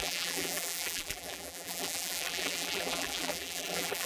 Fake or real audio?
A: fake